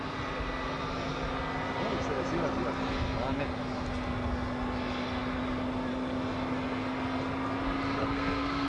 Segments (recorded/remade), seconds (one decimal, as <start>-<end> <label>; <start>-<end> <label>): 0.0-8.0 recorded; 8.0-8.7 remade

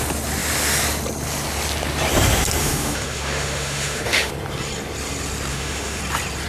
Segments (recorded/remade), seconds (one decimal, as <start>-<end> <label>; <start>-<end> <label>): 0.0-2.6 recorded; 2.6-4.3 remade; 4.3-5.5 recorded; 5.5-6.0 remade; 6.0-6.5 recorded

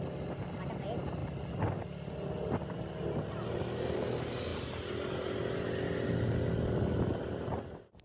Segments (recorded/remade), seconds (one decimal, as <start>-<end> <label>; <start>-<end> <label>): 0.0-8.0 recorded

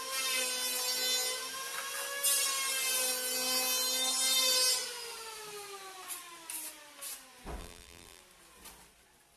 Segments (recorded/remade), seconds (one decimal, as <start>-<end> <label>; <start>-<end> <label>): 0.0-7.6 recorded; 7.6-8.2 remade; 8.2-9.4 recorded